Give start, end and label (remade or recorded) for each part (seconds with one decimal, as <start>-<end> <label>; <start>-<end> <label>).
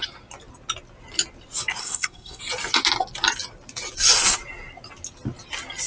0.0-1.8 recorded; 1.8-2.4 remade; 2.4-5.9 recorded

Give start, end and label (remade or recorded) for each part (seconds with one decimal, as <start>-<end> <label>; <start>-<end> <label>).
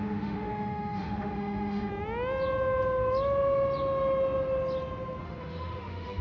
0.0-1.9 remade; 1.9-5.2 recorded; 5.2-6.2 remade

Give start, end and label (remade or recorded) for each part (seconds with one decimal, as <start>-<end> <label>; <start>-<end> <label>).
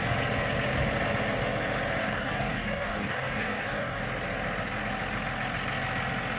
0.0-2.0 recorded; 2.0-4.0 remade; 4.0-6.4 recorded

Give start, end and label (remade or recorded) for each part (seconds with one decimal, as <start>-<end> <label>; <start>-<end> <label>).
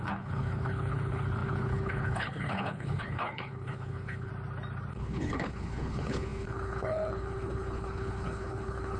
0.0-4.3 remade; 4.3-4.9 recorded; 4.9-9.0 remade